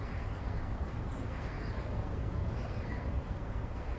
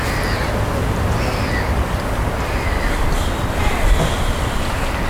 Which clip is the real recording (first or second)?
second